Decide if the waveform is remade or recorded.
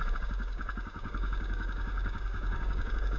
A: remade